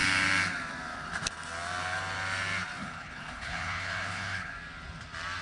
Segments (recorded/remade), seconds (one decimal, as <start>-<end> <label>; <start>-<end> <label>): 0.0-2.8 recorded; 2.8-4.5 remade; 4.5-5.4 recorded